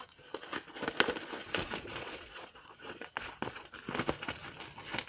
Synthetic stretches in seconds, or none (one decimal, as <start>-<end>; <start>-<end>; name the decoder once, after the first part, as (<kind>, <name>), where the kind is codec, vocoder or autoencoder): 1.4-3.7 (vocoder, Vocos)